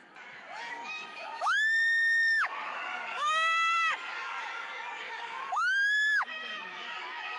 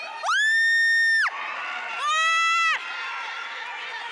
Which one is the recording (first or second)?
second